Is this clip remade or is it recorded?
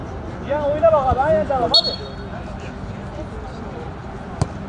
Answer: recorded